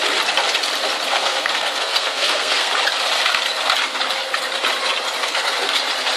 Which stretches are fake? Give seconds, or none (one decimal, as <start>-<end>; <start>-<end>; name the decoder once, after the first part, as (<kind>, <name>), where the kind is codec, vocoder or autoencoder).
1.1-2.7 (codec, SNAC); 5.2-5.7